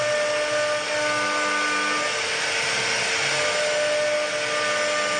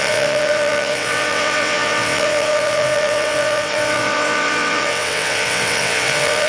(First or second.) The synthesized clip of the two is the second